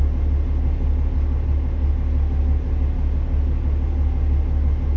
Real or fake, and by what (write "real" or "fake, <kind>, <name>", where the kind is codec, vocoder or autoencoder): real